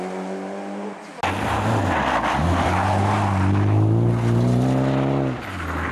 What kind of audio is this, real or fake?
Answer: real